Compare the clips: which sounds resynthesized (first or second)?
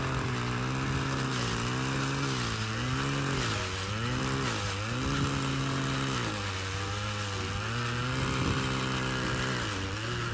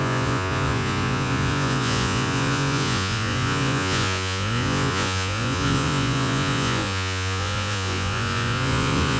second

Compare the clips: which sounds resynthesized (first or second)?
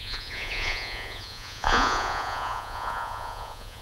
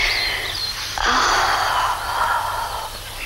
first